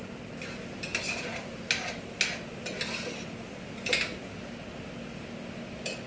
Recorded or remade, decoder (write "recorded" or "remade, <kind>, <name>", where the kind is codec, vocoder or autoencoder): recorded